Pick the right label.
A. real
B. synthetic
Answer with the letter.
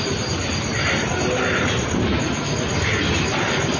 A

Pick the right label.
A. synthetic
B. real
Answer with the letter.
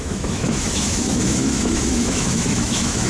A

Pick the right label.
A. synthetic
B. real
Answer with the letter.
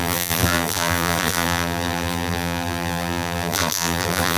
A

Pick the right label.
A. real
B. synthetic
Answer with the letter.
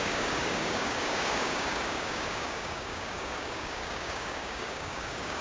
B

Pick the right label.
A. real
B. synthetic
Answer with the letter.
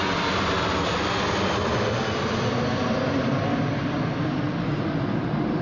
A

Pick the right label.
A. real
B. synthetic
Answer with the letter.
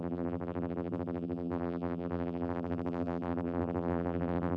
B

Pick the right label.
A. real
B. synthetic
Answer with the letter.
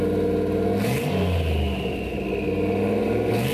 A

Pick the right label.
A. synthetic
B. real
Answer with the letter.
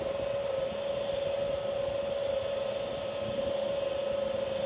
B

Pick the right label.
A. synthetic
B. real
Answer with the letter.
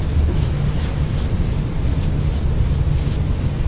B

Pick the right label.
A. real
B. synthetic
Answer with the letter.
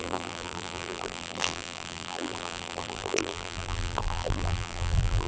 B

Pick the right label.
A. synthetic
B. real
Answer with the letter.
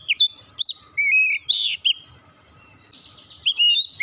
B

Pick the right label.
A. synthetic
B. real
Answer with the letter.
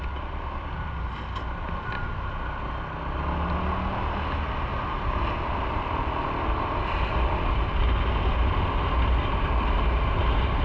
B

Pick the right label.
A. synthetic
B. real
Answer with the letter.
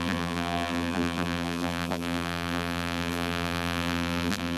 A